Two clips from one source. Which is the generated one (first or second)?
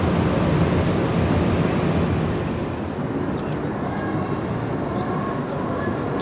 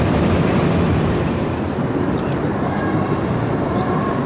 second